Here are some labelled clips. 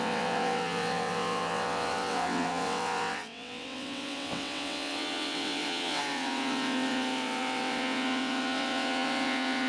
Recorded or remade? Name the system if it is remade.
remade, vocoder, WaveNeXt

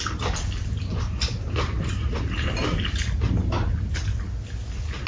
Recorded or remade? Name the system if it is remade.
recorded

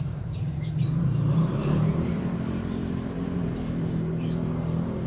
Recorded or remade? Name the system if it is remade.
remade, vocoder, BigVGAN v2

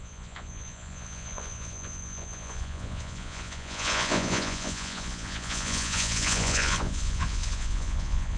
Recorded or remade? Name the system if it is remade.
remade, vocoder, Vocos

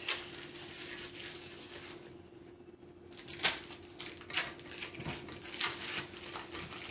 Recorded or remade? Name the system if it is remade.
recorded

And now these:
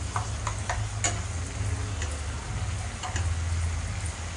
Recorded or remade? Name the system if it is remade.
recorded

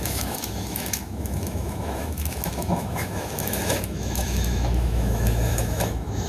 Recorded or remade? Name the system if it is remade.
remade, autoencoder, DAC-VAE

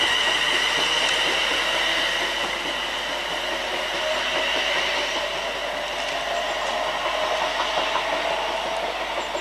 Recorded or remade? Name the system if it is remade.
recorded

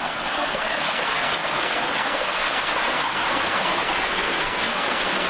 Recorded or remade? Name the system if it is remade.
remade, codec, SNAC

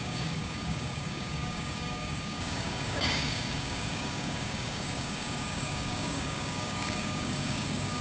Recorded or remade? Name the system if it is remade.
remade, codec, DAC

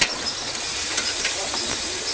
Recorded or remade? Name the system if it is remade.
recorded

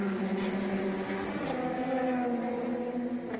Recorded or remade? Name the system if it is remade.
recorded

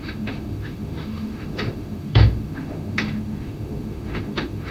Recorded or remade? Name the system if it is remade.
remade, autoencoder, DAC-VAE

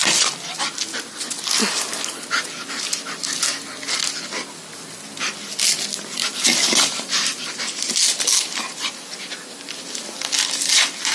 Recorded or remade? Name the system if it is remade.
recorded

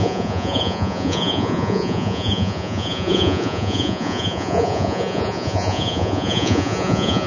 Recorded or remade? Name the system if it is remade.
remade, vocoder, Vocos